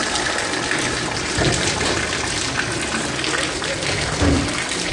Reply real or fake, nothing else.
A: real